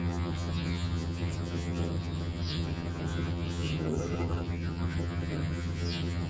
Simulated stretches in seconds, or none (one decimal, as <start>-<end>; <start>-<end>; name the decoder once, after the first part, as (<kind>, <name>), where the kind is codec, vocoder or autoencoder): 0.0-6.3 (vocoder, HiFi-GAN)